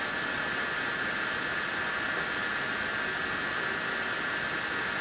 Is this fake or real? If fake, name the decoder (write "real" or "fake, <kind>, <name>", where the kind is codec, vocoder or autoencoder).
real